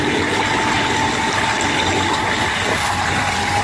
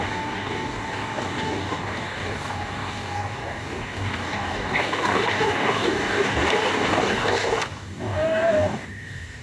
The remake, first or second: second